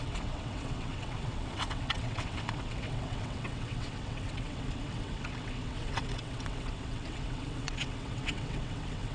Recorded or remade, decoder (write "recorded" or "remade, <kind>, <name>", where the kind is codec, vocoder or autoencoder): remade, vocoder, WaveNeXt